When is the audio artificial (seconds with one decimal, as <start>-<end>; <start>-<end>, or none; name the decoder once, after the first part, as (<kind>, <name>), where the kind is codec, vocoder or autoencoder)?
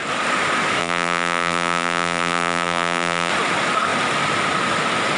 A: 0.8-3.3 (vocoder, BigVGAN v2)